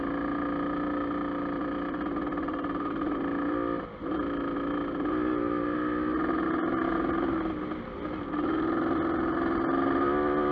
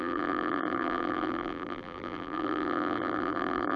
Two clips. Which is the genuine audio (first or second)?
first